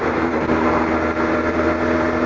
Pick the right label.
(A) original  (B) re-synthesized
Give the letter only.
A